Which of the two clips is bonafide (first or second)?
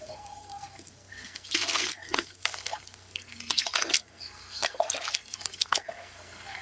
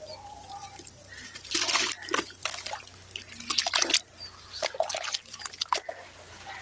second